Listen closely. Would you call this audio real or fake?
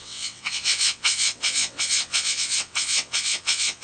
fake